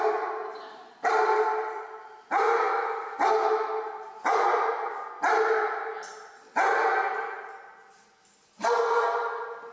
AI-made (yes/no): no